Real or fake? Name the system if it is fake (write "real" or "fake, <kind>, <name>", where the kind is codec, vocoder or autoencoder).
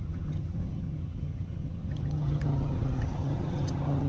fake, vocoder, HiFi-GAN